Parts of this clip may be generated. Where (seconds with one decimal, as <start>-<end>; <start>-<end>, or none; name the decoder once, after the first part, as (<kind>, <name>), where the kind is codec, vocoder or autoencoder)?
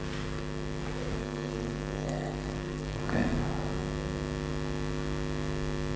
1.2-3.0 (codec, SNAC)